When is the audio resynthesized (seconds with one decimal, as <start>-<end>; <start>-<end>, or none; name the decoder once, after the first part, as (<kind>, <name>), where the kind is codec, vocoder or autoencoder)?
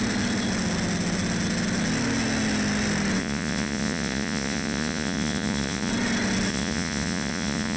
3.2-5.9 (vocoder, Vocos); 6.5-7.8